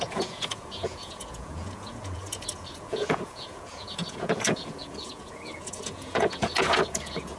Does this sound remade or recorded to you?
remade